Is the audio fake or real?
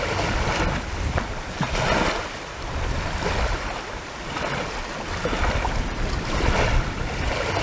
real